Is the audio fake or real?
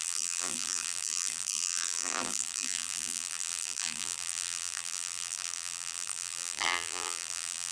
fake